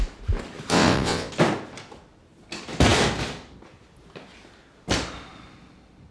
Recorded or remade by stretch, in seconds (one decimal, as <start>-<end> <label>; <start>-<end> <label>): 0.0-0.7 recorded; 0.7-1.3 remade; 1.3-6.1 recorded